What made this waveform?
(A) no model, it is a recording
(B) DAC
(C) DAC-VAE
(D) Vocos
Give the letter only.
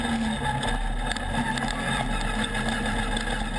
A